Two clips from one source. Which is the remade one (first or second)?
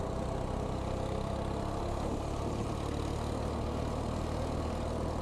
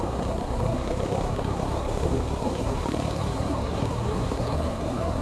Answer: second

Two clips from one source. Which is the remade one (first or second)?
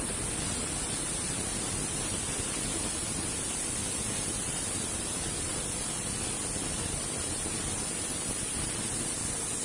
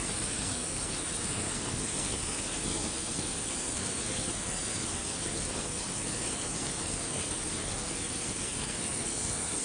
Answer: second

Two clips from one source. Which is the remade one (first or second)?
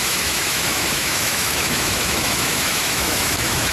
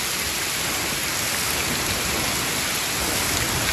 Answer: first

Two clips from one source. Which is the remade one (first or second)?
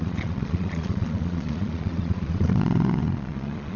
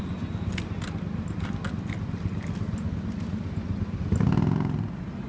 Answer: first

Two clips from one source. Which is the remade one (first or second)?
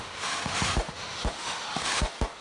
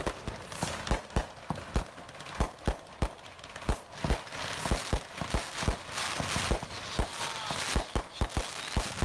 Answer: first